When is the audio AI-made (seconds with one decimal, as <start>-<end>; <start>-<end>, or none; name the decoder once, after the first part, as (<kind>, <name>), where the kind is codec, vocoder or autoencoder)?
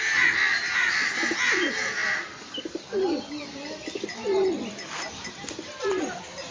none